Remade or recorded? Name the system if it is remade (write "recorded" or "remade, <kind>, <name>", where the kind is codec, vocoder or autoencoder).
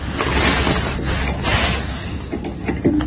recorded